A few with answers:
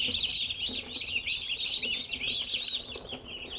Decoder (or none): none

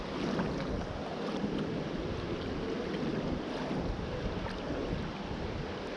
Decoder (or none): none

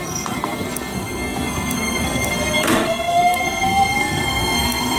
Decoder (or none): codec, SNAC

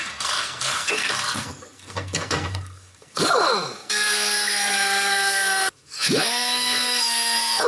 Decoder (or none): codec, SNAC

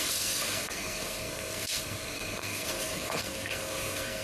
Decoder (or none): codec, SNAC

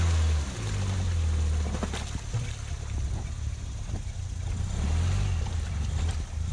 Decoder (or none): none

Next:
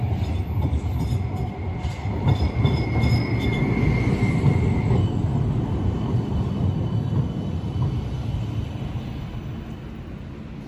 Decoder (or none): none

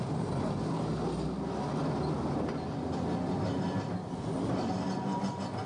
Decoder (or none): none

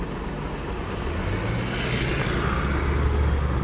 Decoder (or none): none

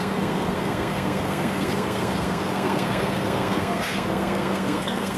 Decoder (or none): codec, SNAC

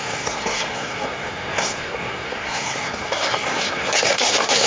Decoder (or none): codec, SNAC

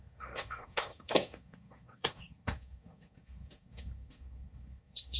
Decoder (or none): codec, SNAC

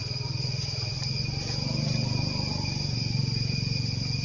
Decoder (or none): none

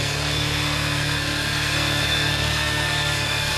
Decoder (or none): codec, SNAC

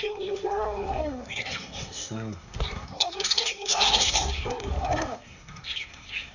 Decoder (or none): codec, SNAC